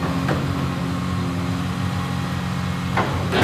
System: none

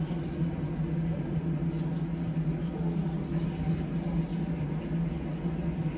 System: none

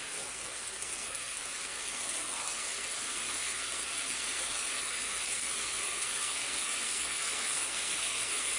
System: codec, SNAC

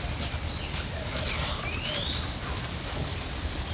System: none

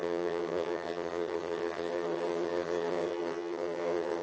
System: vocoder, HiFi-GAN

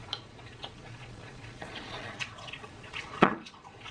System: vocoder, Vocos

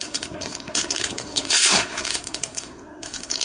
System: codec, SNAC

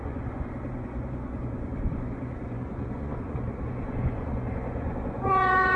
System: vocoder, Vocos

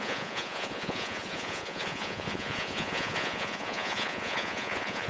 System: vocoder, Vocos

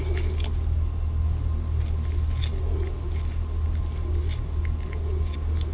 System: none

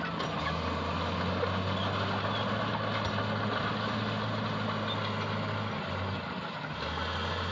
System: none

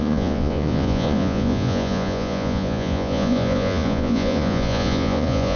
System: vocoder, Vocos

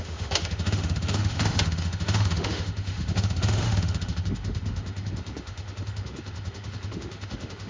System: autoencoder, DAC-VAE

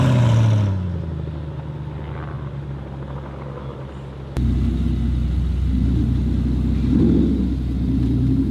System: none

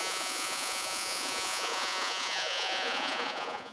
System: vocoder, Vocos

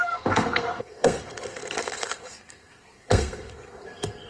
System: codec, SNAC